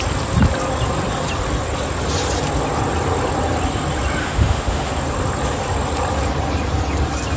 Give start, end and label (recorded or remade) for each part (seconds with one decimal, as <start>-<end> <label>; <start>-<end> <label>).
0.0-4.2 recorded; 4.2-4.9 remade; 4.9-7.4 recorded